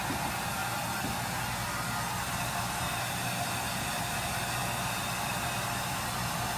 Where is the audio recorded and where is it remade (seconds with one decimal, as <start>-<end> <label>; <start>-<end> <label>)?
0.0-6.6 recorded